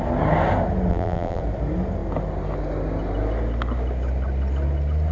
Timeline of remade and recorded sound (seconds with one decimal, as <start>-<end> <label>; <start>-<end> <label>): 0.0-0.9 recorded; 0.9-1.4 remade; 1.4-5.1 recorded